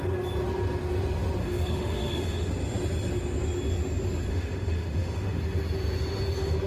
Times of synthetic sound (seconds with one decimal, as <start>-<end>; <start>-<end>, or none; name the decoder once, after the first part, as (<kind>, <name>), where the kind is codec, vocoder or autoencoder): 1.4-2.5 (autoencoder, DAC-VAE); 4.3-5.4